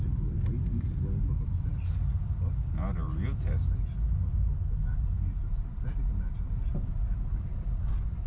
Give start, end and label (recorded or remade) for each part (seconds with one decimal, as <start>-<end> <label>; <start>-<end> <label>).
0.0-8.3 recorded